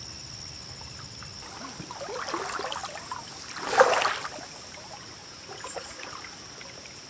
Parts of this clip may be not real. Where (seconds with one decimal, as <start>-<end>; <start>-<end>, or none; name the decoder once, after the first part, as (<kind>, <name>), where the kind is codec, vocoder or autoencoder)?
5.2-6.1 (vocoder, Vocos)